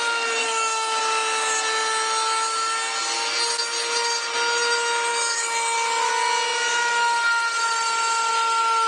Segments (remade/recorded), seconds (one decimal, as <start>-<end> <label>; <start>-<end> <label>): 0.0-0.4 recorded; 0.4-1.0 remade; 1.0-5.1 recorded; 5.1-6.1 remade; 6.1-8.9 recorded